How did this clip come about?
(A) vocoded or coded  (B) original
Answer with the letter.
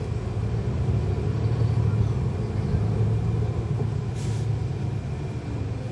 B